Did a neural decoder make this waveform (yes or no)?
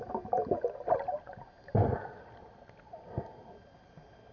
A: no